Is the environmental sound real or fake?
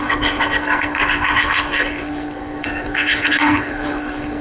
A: fake